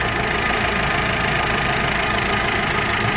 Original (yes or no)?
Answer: yes